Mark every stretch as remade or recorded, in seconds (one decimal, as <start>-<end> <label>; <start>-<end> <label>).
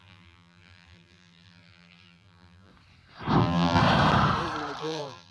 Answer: 0.0-2.7 remade; 2.7-3.4 recorded; 3.4-3.8 remade; 3.8-4.8 recorded; 4.8-5.3 remade